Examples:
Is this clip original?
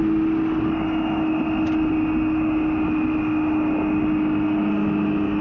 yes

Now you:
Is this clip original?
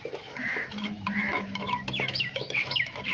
no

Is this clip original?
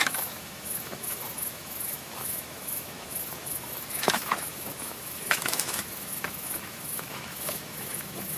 no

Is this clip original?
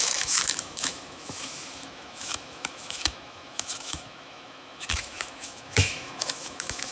no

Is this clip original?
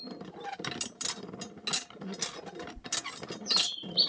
yes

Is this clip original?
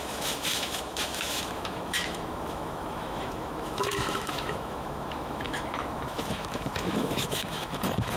no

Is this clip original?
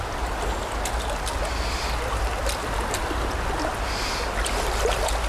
yes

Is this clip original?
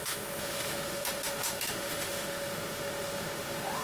no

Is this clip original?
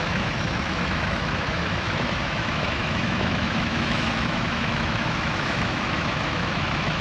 no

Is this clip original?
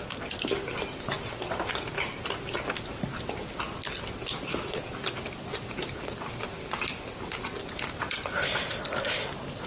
yes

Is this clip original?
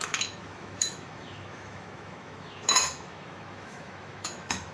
no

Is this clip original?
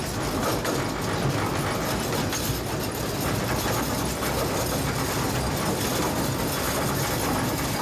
yes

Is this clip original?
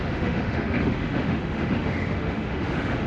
no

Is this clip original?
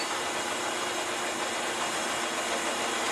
yes